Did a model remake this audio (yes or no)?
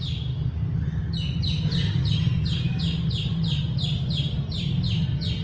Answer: no